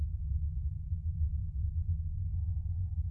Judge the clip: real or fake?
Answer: real